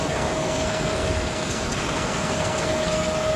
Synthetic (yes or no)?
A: yes